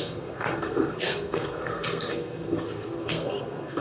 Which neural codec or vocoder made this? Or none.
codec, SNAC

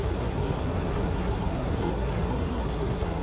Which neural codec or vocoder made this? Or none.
codec, SNAC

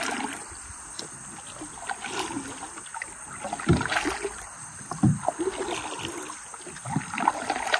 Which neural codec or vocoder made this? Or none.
none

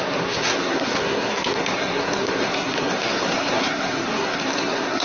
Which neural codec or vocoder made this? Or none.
codec, SNAC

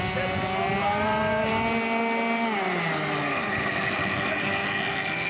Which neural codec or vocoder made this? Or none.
none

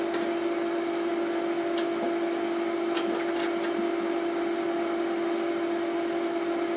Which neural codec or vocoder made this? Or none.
none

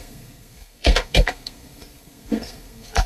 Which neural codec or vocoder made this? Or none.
codec, SNAC